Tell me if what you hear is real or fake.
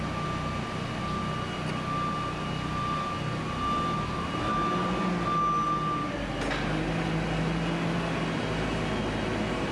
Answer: real